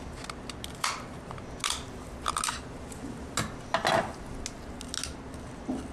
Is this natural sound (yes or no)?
yes